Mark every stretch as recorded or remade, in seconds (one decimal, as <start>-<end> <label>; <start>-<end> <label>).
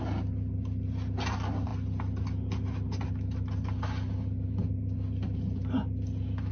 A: 0.0-6.5 recorded